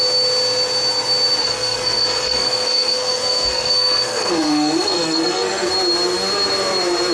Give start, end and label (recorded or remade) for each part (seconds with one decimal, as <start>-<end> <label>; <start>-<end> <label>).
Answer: 0.0-1.4 recorded; 1.4-5.7 remade; 5.7-7.1 recorded